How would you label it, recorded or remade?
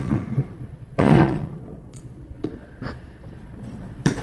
remade